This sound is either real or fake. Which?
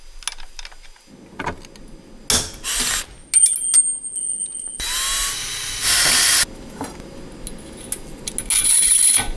real